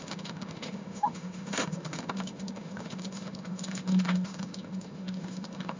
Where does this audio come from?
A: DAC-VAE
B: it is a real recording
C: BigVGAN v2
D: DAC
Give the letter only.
A